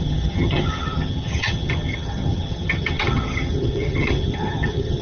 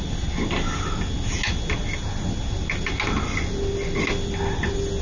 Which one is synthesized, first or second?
first